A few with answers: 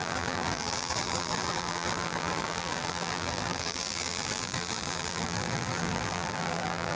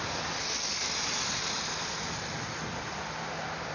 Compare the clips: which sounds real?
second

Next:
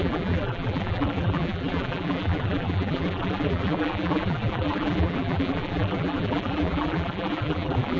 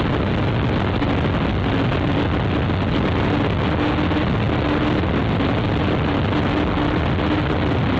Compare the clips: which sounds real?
second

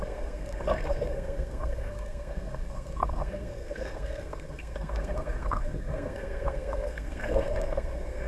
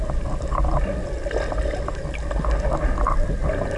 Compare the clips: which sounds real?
second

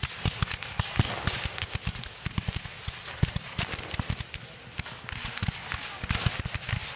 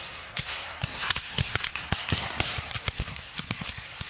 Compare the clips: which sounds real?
first